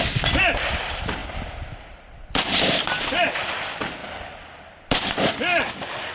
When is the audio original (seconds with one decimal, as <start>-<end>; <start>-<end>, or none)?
4.0-5.3